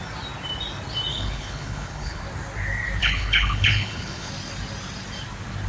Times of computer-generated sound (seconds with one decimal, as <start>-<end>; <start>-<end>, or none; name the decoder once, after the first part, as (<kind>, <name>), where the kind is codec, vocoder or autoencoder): 1.1-2.2 (codec, HILCodec); 3.0-4.3